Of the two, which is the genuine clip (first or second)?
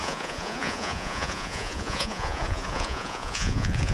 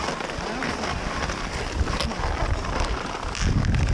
second